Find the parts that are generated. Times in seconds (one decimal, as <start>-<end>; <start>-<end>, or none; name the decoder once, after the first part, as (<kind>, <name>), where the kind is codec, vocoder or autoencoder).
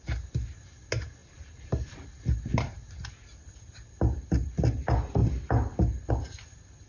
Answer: 1.2-2.1 (vocoder, BigVGAN v2)